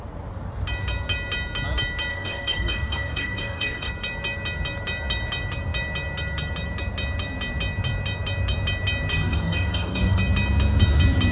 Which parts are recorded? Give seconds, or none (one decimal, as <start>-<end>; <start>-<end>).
0.0-2.1; 3.9-9.1; 10.2-11.3